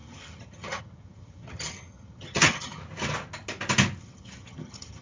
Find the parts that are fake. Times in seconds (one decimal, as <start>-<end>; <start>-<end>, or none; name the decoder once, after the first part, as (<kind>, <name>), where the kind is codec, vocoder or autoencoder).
0.0-2.8 (vocoder, HiFi-GAN); 4.0-5.0